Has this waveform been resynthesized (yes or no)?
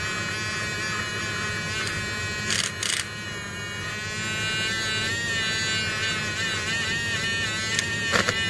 no